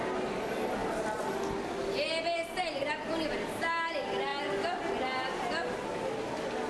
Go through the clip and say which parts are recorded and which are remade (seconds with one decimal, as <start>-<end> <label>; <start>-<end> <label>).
0.0-6.7 recorded